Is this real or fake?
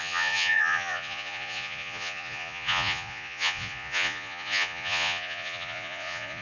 fake